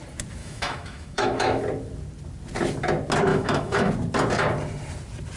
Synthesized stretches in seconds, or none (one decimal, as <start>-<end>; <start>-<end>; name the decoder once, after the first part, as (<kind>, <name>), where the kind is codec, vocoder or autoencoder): 0.4-1.6 (autoencoder, DAC-VAE); 3.3-3.9